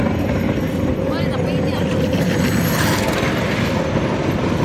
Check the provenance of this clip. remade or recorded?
recorded